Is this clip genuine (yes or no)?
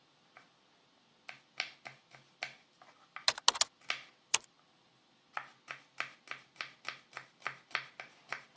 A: yes